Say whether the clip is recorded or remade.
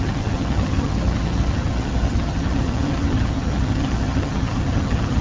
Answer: remade